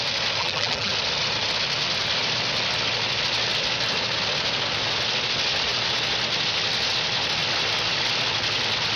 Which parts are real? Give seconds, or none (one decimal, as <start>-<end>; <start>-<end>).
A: 0.0-0.4; 0.9-9.0